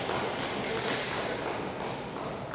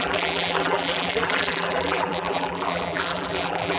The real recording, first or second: first